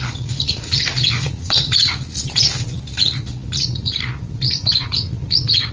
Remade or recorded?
remade